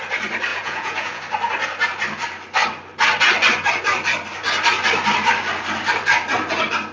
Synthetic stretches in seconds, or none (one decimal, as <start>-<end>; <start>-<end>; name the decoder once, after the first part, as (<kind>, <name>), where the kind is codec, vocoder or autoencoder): 0.5-1.2 (vocoder, Vocos)